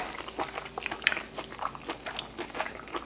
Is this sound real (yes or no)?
yes